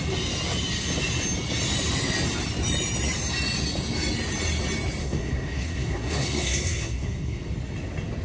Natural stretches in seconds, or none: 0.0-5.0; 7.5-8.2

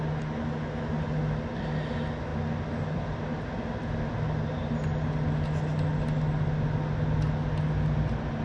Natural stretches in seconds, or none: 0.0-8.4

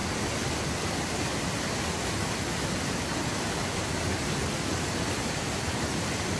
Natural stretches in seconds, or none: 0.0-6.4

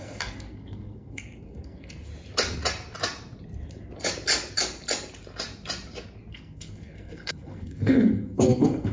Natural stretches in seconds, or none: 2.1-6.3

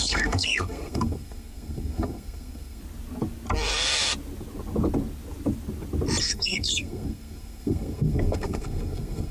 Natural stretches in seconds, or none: 2.8-6.2